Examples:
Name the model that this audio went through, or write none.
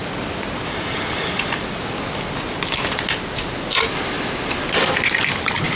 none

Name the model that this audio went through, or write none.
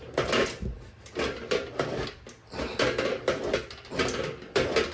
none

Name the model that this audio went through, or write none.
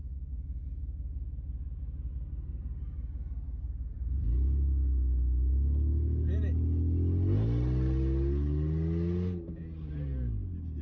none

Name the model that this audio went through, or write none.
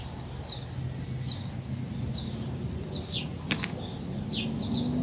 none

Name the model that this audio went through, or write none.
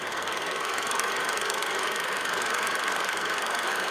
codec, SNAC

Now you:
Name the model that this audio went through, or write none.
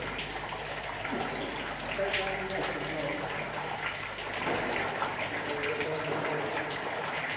none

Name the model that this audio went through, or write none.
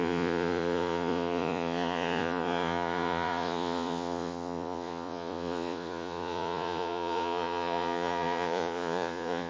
vocoder, Vocos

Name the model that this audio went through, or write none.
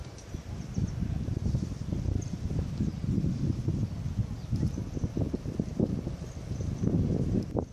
none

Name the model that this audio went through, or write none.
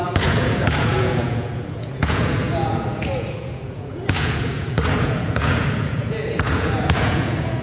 vocoder, Vocos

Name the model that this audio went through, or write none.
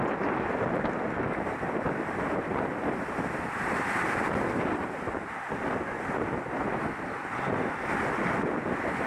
none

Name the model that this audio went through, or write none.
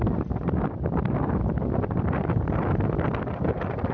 vocoder, BigVGAN v2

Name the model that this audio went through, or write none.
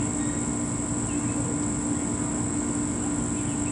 none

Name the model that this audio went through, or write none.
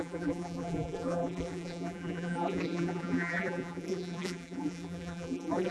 vocoder, BigVGAN v2